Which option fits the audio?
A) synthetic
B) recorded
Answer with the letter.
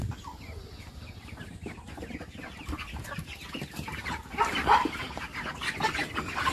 B